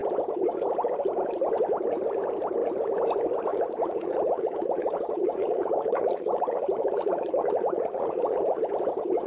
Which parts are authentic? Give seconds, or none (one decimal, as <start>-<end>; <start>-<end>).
0.0-3.5; 8.6-9.3